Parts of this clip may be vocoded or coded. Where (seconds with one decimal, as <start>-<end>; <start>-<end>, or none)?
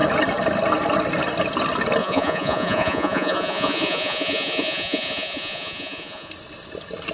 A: 2.0-6.3